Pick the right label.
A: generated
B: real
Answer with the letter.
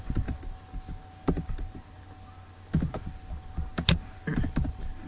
B